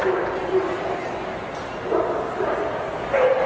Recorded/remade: recorded